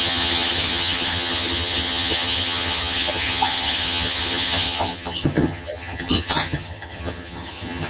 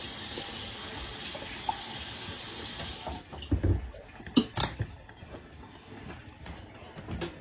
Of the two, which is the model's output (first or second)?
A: first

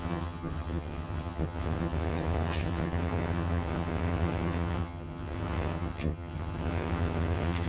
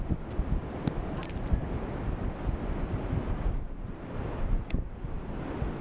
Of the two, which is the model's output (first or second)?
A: first